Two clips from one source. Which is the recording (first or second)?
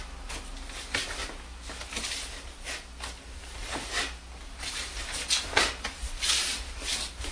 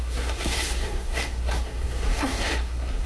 first